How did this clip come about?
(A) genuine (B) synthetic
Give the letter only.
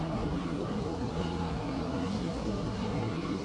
B